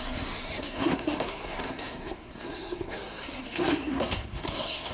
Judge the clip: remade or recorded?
remade